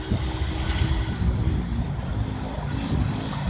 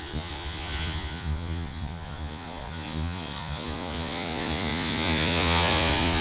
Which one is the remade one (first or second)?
second